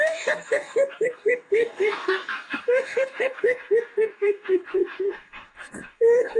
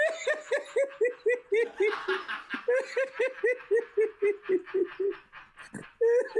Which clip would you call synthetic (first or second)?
first